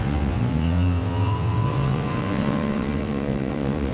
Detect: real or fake fake